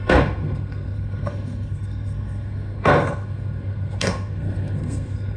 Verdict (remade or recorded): remade